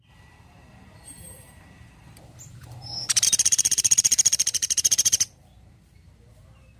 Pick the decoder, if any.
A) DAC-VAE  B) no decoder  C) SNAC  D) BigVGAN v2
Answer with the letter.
D